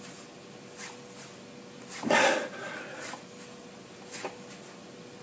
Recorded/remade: recorded